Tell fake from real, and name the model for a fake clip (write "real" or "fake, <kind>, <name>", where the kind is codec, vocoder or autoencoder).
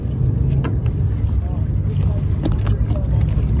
real